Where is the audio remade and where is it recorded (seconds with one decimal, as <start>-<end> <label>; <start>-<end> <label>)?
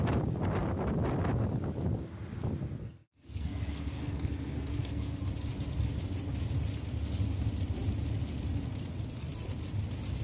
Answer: 0.0-2.8 recorded; 2.8-5.2 remade; 5.2-10.2 recorded